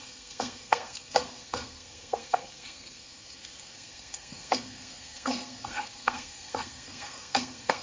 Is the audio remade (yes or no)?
yes